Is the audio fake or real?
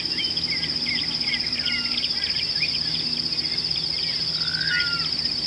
real